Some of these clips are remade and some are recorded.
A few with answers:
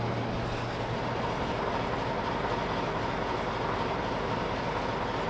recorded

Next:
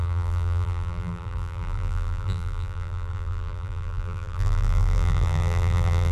remade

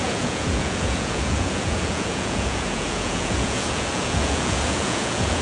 remade